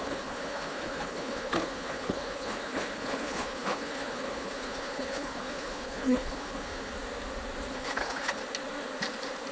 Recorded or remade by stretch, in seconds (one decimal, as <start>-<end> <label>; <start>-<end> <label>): 0.0-6.9 remade; 6.9-7.7 recorded; 7.7-8.4 remade; 8.4-9.5 recorded